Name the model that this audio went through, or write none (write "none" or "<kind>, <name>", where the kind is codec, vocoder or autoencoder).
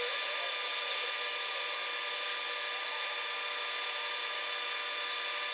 none